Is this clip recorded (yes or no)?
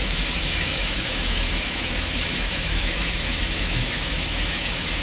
no